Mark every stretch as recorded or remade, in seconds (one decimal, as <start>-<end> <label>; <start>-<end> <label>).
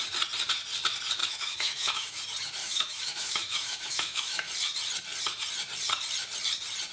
0.0-1.2 recorded; 1.2-2.2 remade; 2.2-2.6 recorded; 2.6-4.5 remade; 4.5-6.9 recorded